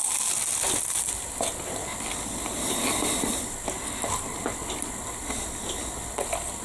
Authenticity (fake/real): real